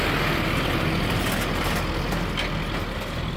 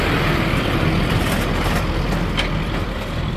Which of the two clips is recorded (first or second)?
first